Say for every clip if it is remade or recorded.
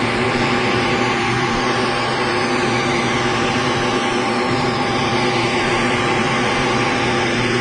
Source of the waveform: remade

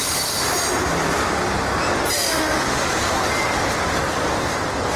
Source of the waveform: recorded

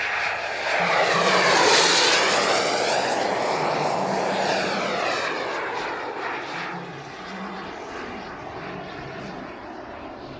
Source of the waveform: recorded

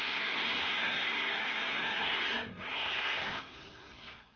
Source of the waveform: remade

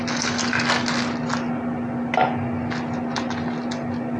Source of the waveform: recorded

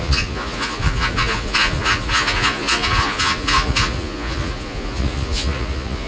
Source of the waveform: remade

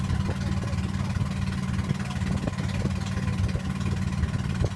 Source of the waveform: recorded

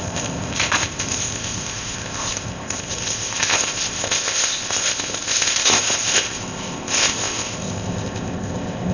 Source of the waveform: remade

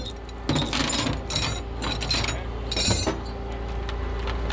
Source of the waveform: recorded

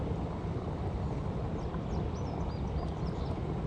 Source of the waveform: recorded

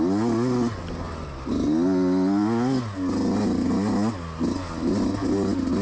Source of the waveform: recorded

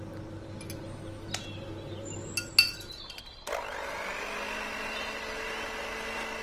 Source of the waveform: recorded